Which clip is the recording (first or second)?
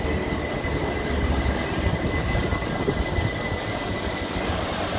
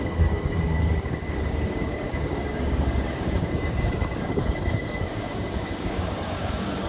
first